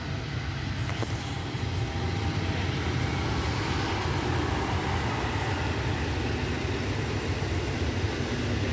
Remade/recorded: recorded